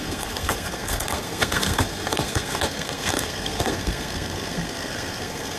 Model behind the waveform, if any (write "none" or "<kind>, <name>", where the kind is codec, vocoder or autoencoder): codec, SNAC